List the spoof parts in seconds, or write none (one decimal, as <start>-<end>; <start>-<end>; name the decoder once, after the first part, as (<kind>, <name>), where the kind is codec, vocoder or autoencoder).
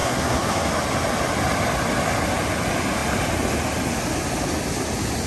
0.0-0.7 (codec, SNAC)